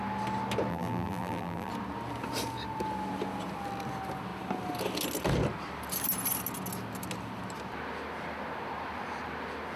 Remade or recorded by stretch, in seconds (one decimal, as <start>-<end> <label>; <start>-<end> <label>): 0.0-0.7 recorded; 0.7-1.7 remade; 1.7-9.8 recorded